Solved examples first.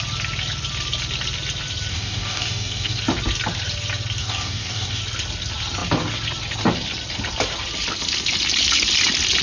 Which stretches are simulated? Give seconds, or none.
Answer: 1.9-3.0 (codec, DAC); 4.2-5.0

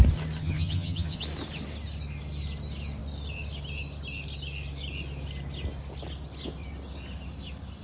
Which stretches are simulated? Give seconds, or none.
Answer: 0.4-1.2 (vocoder, HiFi-GAN)

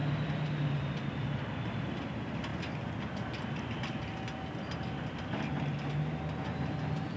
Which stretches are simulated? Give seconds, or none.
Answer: none

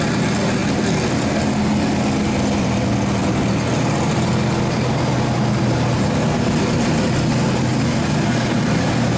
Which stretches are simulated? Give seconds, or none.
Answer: none

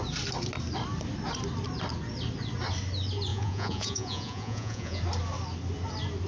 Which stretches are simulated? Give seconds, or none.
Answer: 3.3-5.0 (vocoder, Vocos)